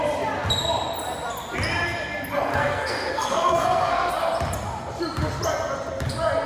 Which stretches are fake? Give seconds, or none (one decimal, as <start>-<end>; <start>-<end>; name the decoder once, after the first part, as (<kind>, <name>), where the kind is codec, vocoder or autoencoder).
2.5-4.1 (codec, SNAC)

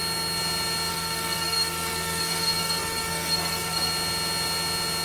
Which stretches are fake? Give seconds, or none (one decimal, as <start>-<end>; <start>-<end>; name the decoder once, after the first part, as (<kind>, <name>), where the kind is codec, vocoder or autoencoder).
0.9-3.9 (codec, SNAC)